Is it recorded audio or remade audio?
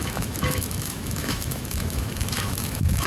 remade